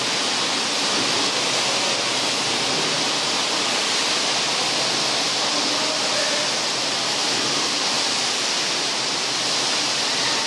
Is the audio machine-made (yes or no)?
no